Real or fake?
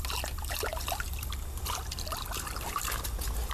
fake